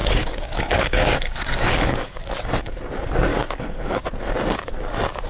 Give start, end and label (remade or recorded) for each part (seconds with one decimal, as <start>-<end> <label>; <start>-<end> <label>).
0.0-2.3 remade; 2.3-3.3 recorded; 3.3-4.0 remade; 4.0-5.3 recorded